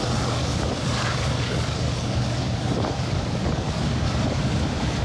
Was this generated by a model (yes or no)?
yes